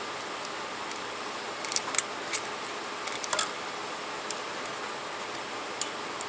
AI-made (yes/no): no